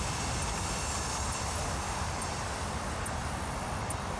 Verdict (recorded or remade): recorded